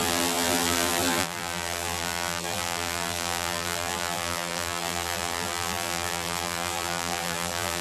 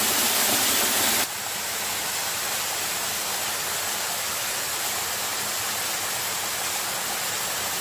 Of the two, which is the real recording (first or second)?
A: second